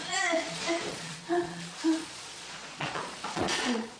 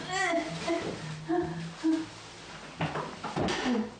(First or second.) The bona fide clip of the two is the second